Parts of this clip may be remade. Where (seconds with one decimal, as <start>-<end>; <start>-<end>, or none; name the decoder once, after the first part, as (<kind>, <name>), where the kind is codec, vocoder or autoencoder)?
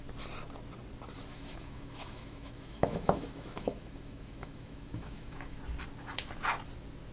1.3-5.6 (autoencoder, DAC-VAE)